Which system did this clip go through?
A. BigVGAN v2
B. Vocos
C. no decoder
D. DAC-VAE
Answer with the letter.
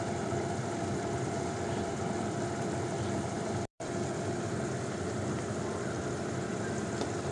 A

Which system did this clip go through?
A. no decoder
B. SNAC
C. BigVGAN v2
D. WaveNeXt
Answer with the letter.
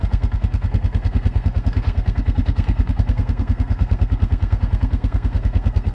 B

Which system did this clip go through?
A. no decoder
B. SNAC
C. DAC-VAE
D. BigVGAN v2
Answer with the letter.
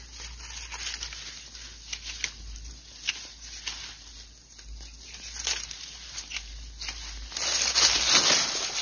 A